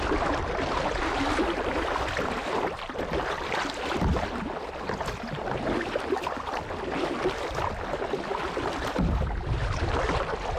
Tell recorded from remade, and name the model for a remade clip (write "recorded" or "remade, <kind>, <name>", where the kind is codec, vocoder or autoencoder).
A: recorded